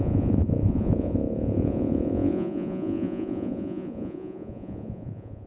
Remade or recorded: remade